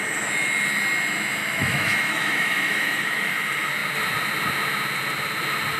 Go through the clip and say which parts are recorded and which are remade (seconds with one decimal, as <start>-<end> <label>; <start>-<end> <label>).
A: 0.0-1.4 recorded; 1.4-3.3 remade; 3.3-5.8 recorded